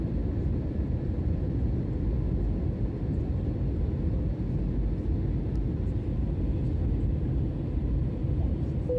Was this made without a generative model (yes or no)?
yes